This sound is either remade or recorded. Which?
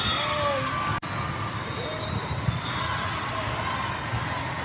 recorded